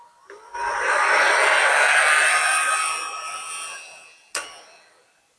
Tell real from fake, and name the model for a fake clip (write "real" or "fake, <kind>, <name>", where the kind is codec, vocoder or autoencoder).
real